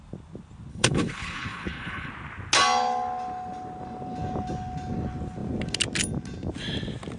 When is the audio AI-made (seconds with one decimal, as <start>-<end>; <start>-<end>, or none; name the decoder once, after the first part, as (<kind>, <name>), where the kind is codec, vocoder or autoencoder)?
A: 0.7-2.1 (codec, HILCodec)